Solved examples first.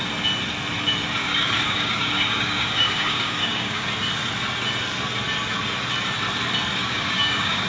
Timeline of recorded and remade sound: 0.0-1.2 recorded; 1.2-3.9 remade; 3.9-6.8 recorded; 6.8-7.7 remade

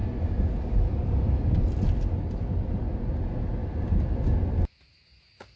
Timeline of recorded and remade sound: 0.0-5.6 recorded

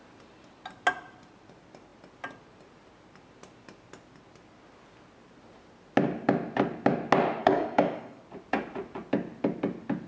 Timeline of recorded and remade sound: 0.0-7.4 recorded; 7.4-8.2 remade; 8.2-10.1 recorded

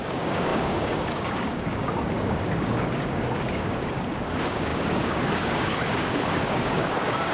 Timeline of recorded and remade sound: 0.0-7.3 remade